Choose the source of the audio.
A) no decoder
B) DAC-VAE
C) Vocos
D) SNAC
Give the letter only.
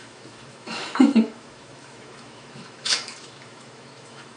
B